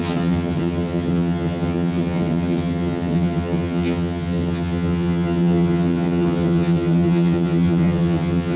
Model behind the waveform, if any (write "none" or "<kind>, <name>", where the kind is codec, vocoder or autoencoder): vocoder, HiFi-GAN